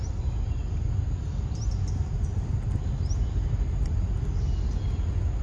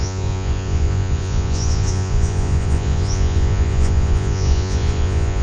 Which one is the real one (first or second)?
first